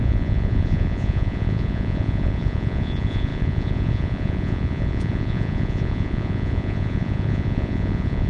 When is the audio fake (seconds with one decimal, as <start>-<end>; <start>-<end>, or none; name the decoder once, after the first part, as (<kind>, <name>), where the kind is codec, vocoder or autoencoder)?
0.0-8.3 (vocoder, Vocos)